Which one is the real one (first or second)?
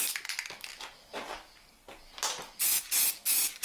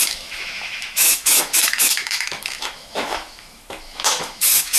first